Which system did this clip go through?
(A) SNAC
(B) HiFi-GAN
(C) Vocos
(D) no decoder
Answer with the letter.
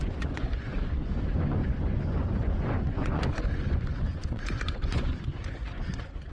C